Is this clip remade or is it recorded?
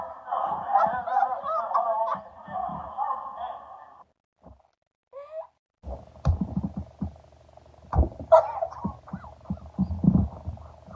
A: recorded